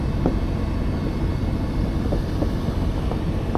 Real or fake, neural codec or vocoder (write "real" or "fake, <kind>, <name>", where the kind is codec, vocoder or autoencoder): real